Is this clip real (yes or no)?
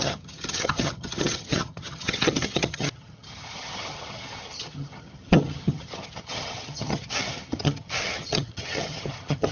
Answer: no